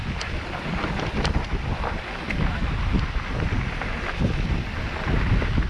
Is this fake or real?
real